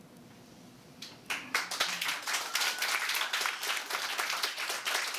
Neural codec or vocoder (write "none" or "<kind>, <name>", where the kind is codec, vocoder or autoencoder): none